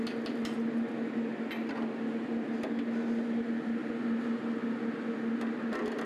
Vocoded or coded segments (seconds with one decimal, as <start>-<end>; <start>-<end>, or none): none